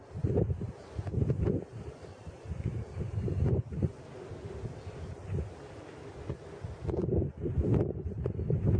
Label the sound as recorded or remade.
recorded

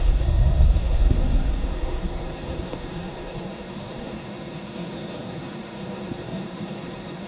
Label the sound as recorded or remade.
remade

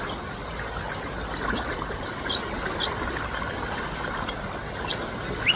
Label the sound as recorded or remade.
recorded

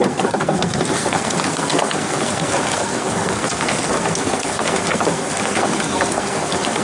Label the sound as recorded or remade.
remade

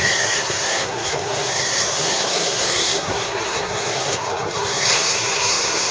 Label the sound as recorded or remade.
remade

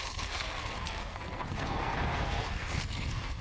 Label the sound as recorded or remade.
remade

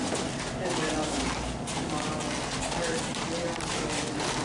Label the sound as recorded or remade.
recorded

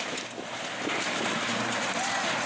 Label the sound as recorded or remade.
recorded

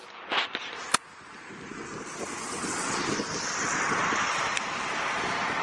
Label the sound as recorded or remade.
recorded